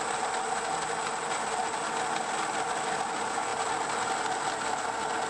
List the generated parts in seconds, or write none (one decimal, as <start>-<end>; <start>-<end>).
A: none

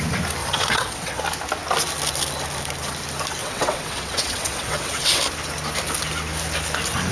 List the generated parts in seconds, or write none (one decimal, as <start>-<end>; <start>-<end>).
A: 0.4-1.2; 3.4-5.2

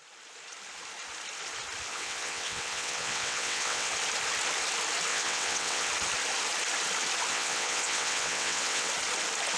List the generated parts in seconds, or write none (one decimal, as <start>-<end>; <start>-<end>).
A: 1.9-3.9; 5.1-5.9; 7.3-8.9

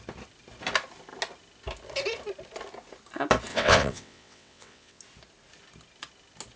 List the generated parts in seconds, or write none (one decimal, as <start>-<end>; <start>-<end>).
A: 3.5-5.0

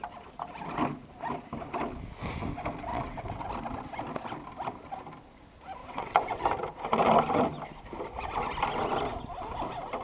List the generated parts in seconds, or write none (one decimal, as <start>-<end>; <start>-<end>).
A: 2.9-3.5; 5.8-6.4